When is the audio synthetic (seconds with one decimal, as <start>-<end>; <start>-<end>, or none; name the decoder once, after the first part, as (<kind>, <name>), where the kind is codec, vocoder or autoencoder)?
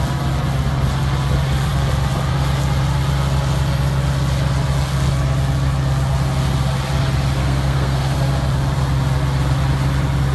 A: 7.4-8.3 (codec, SNAC)